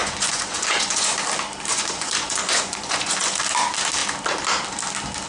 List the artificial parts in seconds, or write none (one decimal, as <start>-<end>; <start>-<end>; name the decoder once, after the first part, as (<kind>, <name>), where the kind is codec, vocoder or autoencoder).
0.0-1.1 (vocoder, Vocos); 1.7-3.4